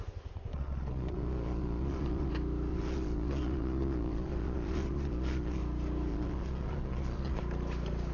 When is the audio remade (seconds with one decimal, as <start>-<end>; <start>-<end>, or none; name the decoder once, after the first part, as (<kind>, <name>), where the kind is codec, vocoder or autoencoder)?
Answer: 0.5-2.3 (vocoder, Vocos); 2.7-5.6; 6.1-7.4